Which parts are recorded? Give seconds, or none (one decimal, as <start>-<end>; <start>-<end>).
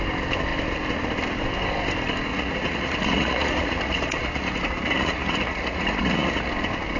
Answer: 0.0-2.3; 6.5-7.0